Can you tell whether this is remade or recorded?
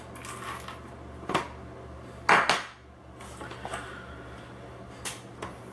recorded